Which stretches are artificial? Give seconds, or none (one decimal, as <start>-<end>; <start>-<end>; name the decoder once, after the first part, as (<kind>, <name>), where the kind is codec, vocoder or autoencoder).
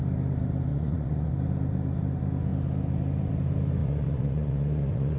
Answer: 0.7-1.3 (vocoder, Vocos); 3.8-5.2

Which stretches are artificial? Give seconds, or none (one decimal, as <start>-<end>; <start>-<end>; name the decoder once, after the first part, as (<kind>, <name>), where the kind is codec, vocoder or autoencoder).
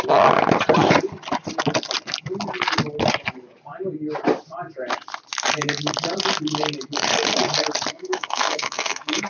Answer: 7.9-9.3 (codec, SNAC)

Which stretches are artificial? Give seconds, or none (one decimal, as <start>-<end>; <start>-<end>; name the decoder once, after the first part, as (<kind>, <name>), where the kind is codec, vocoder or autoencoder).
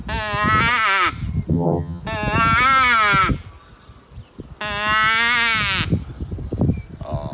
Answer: 1.5-2.0 (vocoder, HiFi-GAN)